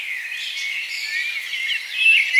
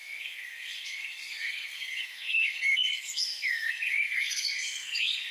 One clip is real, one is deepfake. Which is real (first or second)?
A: first